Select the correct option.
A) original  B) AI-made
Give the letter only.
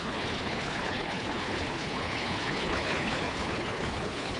B